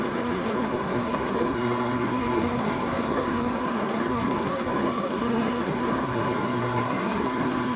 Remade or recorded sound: remade